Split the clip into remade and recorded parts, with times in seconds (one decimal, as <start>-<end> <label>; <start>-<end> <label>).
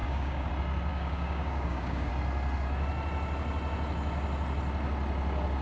0.0-0.5 remade; 0.5-0.9 recorded; 0.9-2.1 remade; 2.1-5.6 recorded